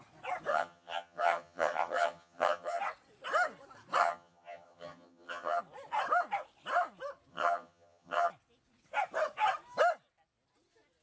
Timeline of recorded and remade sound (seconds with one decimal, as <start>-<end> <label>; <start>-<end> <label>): 0.0-0.5 recorded; 0.5-2.8 remade; 2.8-4.0 recorded; 4.0-5.6 remade; 5.6-7.3 recorded; 7.3-8.3 remade; 8.3-11.0 recorded